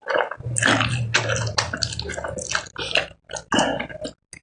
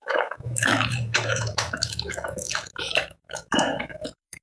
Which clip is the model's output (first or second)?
second